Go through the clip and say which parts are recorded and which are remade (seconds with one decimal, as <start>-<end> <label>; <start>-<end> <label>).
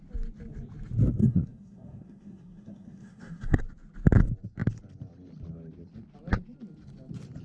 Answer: 0.0-1.2 recorded; 1.2-3.6 remade; 3.6-7.4 recorded